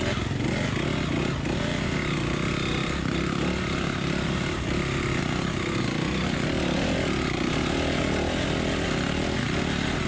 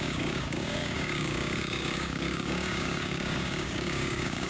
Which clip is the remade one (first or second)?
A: second